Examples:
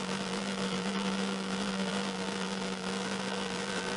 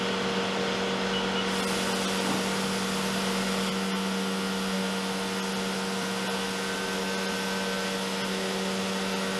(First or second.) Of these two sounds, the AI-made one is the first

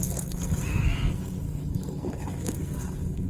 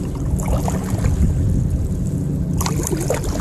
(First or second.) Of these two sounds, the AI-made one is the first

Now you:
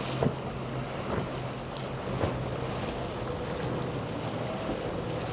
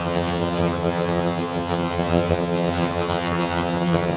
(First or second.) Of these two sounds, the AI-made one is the second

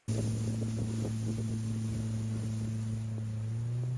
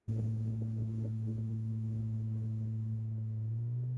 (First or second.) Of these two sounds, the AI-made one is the second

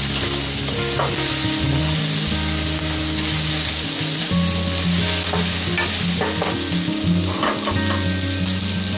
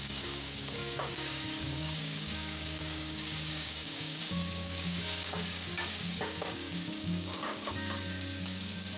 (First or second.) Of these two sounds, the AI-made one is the second